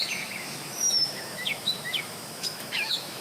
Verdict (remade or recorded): remade